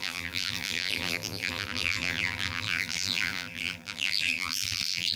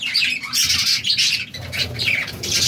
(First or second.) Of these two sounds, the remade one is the first